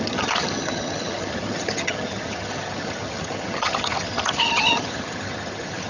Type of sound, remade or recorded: remade